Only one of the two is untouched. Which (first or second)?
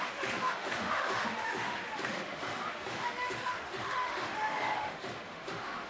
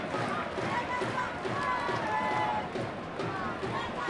second